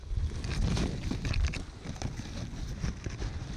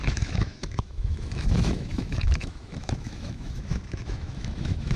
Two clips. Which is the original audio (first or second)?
first